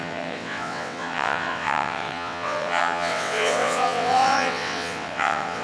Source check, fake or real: fake